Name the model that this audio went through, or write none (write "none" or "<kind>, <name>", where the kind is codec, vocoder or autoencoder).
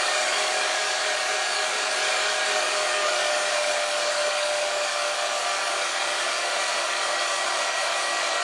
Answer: codec, DAC